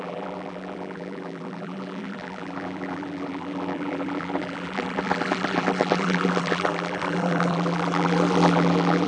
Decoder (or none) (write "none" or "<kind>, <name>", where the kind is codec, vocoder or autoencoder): vocoder, BigVGAN v2